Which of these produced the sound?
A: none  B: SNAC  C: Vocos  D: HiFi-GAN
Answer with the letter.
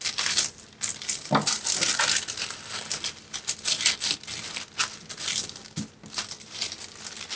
A